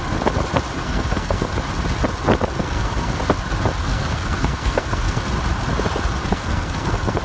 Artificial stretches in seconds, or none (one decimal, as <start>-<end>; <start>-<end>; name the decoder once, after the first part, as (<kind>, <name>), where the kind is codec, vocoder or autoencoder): 0.8-1.5 (codec, SNAC); 2.6-3.2; 3.8-5.2; 6.3-7.2